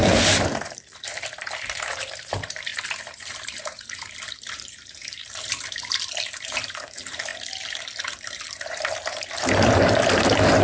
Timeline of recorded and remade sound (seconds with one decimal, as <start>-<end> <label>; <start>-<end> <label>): 0.0-7.3 remade; 7.3-8.1 recorded; 8.1-10.6 remade